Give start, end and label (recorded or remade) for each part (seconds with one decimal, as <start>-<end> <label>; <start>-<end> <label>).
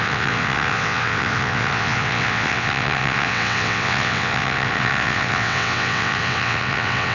0.0-7.1 remade